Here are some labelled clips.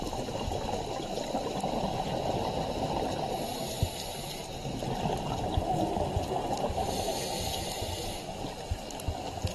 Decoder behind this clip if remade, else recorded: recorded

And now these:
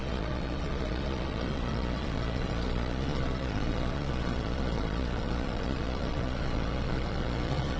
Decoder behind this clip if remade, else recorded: remade, vocoder, Vocos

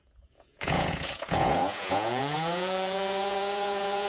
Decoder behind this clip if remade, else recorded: remade, vocoder, Vocos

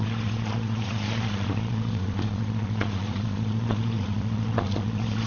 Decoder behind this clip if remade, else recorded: remade, vocoder, Vocos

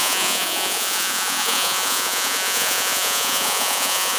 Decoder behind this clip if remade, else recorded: remade, vocoder, Vocos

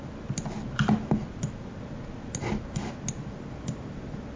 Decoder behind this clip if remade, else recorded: recorded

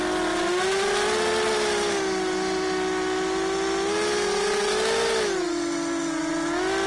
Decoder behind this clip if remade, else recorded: recorded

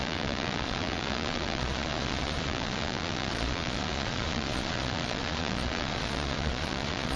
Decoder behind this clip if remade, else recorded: remade, vocoder, Vocos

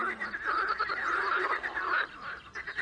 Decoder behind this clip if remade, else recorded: recorded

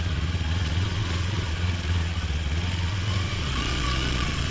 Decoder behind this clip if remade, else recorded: remade, vocoder, Vocos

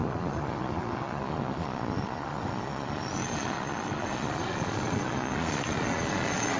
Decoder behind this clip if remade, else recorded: remade, vocoder, Vocos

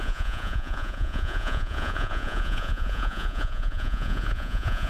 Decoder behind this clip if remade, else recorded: remade, vocoder, Vocos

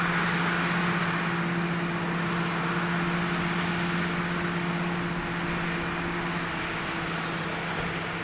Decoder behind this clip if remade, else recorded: recorded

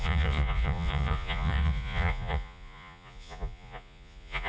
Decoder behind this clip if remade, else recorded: remade, vocoder, Vocos